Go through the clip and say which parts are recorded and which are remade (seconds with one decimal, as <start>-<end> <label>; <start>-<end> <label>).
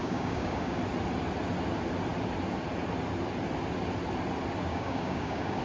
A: 0.0-0.8 remade; 0.8-4.7 recorded; 4.7-5.6 remade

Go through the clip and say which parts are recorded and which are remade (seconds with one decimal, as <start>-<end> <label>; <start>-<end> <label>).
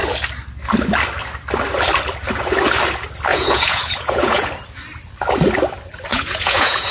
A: 0.0-3.3 recorded; 3.3-4.5 remade; 4.5-6.1 recorded; 6.1-6.9 remade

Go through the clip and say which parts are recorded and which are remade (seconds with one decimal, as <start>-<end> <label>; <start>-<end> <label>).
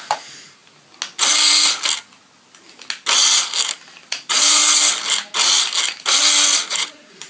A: 0.0-0.6 remade; 0.6-4.1 recorded; 4.1-4.6 remade; 4.6-6.7 recorded; 6.7-7.3 remade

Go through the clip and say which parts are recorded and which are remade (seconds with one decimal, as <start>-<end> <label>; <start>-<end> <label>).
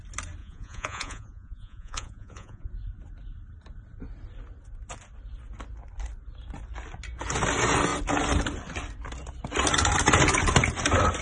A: 0.0-0.4 recorded; 0.4-2.7 remade; 2.7-11.2 recorded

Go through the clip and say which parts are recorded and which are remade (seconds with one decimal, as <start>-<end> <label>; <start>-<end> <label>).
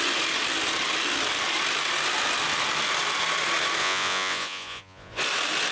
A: 0.0-3.8 recorded; 3.8-5.2 remade; 5.2-5.7 recorded